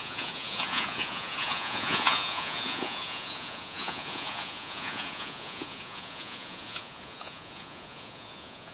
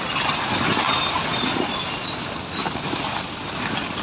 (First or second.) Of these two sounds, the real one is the second